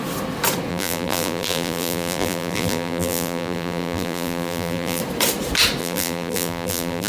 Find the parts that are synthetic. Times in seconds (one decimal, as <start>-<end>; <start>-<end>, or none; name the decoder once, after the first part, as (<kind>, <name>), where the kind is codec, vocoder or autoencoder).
0.7-5.0 (vocoder, BigVGAN v2); 5.8-7.1